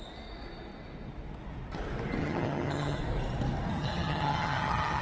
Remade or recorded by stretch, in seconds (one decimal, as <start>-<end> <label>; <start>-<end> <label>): 0.0-2.2 recorded; 2.2-3.0 remade; 3.0-3.7 recorded; 3.7-5.0 remade